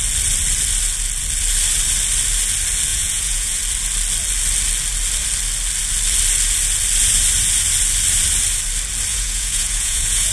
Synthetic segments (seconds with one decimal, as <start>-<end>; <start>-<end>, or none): 2.9-3.6; 9.1-10.3